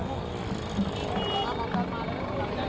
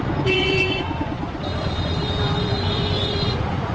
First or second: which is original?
first